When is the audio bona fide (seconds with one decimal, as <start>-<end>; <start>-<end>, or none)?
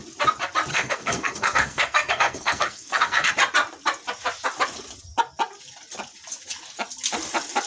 0.0-0.7; 3.3-7.7